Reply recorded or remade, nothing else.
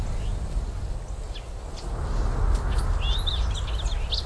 recorded